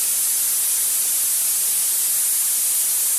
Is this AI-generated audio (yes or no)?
no